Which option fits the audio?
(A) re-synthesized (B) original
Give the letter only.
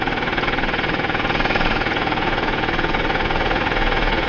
A